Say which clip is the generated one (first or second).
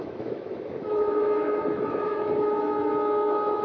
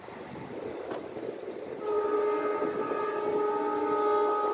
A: first